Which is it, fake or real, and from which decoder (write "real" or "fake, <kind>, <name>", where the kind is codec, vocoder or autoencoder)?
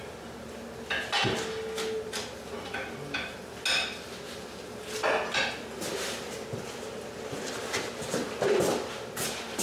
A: real